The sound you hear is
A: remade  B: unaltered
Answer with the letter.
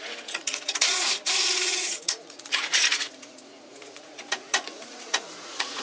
A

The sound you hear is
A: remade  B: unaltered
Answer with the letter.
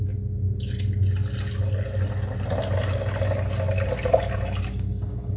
B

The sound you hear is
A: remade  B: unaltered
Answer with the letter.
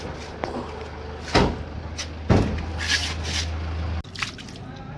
B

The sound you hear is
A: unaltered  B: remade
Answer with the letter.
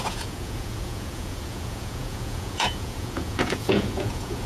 B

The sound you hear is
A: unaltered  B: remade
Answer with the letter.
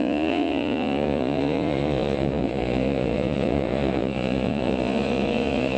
B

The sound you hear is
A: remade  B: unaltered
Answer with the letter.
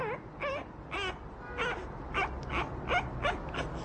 B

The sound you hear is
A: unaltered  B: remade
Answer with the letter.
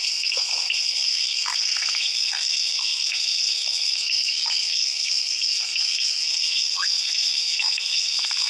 B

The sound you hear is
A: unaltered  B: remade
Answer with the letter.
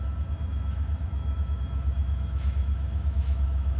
B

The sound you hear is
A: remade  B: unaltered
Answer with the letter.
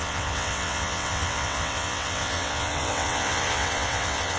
A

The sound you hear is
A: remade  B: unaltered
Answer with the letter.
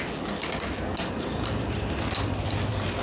A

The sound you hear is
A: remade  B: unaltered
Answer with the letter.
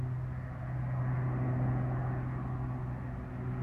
B